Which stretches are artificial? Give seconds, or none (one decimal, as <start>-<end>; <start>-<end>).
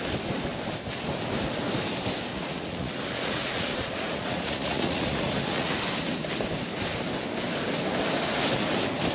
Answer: 2.3-5.8